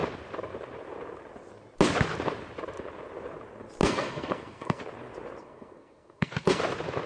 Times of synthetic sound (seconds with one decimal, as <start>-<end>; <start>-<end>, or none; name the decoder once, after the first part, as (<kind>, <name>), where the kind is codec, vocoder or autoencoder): 3.8-4.8 (codec, SNAC); 5.4-6.6